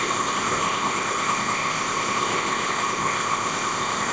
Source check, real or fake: fake